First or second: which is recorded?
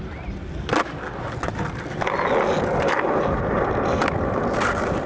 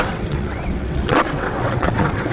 first